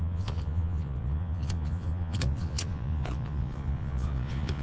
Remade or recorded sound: remade